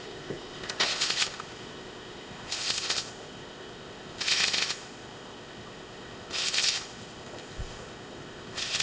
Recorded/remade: remade